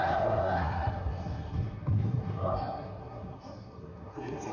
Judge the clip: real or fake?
fake